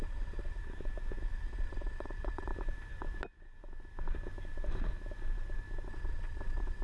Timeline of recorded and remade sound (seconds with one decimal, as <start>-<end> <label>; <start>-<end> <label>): 0.0-0.6 remade; 0.6-1.2 recorded; 1.2-2.5 remade; 2.5-5.9 recorded; 5.9-6.8 remade